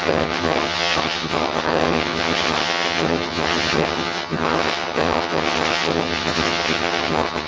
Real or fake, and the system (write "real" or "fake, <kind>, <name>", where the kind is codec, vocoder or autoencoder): fake, vocoder, HiFi-GAN